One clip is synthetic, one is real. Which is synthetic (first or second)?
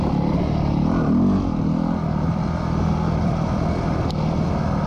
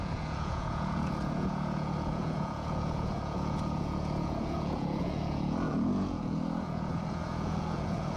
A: second